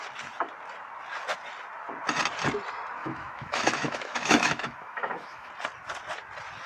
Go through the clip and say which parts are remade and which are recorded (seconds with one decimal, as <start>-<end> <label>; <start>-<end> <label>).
0.0-3.0 recorded; 3.0-5.5 remade; 5.5-6.7 recorded